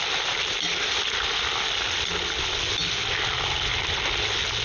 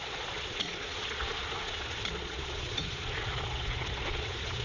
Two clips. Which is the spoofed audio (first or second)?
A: second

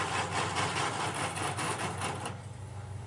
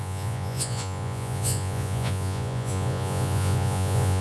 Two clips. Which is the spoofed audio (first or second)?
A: second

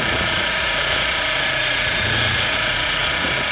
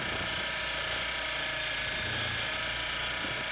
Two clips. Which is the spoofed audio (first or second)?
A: first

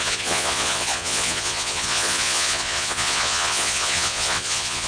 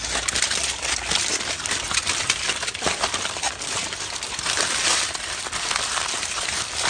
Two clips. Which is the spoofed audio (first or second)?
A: first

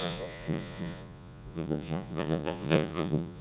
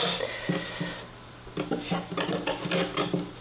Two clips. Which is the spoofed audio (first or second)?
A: first